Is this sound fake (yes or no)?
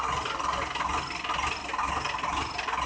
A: no